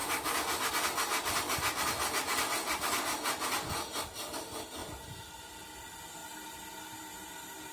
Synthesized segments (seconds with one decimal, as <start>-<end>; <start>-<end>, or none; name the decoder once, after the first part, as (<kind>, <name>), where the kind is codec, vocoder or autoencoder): 0.0-0.7 (vocoder, BigVGAN v2)